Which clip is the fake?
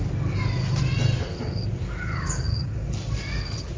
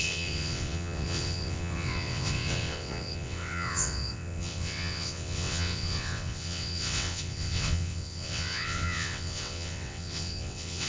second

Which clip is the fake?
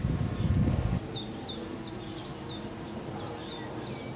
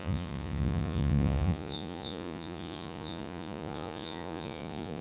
second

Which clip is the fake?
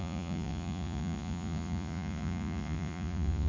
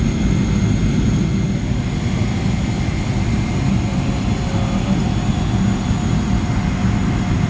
first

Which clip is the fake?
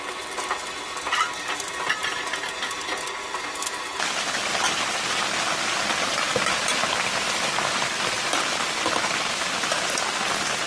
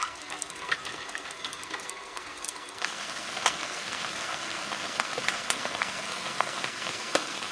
second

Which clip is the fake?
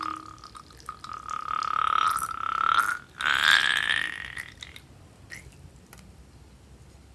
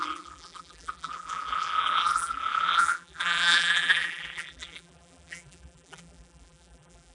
second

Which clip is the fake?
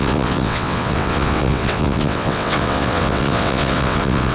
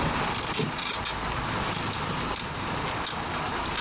first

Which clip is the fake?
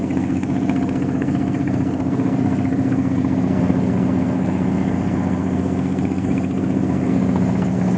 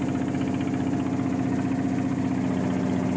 first